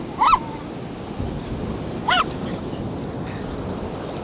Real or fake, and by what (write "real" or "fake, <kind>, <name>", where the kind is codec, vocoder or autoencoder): real